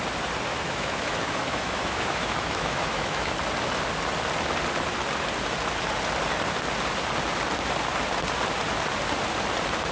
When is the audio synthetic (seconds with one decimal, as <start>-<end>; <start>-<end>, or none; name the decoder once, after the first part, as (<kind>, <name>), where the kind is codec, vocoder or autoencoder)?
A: 0.5-3.3 (autoencoder, DAC-VAE)